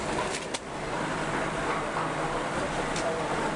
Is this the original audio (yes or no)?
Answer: yes